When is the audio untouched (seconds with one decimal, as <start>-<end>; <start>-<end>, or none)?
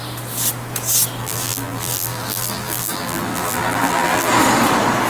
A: 0.0-1.2; 4.3-5.1